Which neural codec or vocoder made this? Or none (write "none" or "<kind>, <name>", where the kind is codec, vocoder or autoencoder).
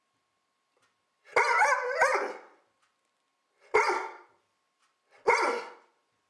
none